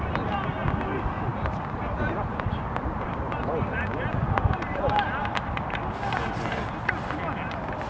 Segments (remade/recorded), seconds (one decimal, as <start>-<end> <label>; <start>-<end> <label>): 0.0-1.3 recorded; 1.3-4.8 remade; 4.8-7.9 recorded